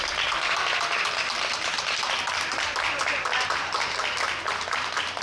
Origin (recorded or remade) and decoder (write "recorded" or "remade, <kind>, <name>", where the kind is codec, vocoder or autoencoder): recorded